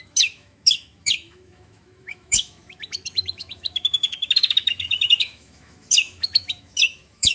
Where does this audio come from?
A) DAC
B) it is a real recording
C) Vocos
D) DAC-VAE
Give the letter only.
D